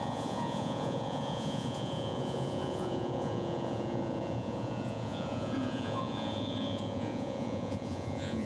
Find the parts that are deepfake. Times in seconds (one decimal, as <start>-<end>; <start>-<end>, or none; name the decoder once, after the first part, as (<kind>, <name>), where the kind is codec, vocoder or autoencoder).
0.0-8.5 (vocoder, Vocos)